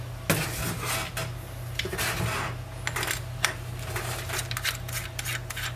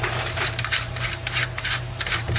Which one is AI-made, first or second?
second